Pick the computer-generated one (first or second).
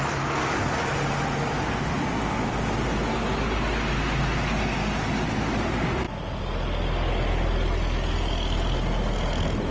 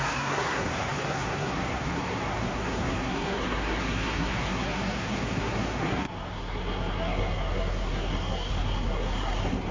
second